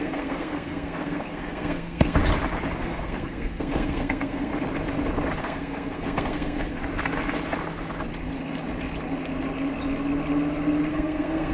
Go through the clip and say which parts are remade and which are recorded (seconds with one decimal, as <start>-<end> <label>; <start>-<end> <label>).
0.0-2.2 remade; 2.2-2.8 recorded; 2.8-4.5 remade; 4.5-5.4 recorded; 5.4-6.8 remade; 6.8-10.9 recorded; 10.9-11.5 remade